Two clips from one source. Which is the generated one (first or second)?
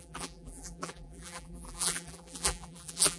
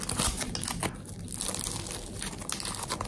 first